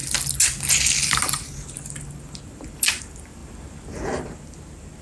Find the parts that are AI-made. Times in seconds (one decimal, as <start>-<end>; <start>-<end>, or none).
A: none